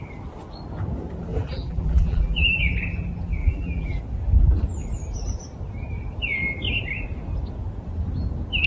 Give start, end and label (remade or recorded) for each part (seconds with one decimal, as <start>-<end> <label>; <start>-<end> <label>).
0.0-1.3 recorded; 1.3-2.6 remade; 2.6-3.4 recorded; 3.4-4.0 remade; 4.0-8.7 recorded